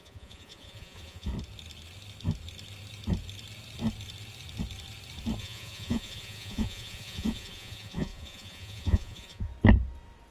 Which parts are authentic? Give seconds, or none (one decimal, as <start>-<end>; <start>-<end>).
1.3-5.4; 9.5-10.3